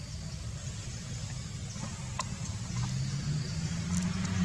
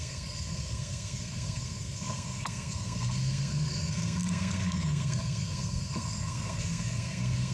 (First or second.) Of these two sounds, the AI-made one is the second